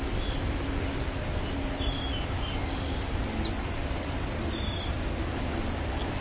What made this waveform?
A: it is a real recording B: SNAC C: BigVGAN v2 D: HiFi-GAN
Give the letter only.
A